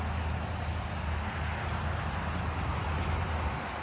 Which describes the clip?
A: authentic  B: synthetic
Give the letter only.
A